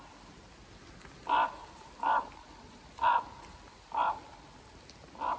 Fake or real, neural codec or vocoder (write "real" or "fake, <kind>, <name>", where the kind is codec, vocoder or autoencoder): real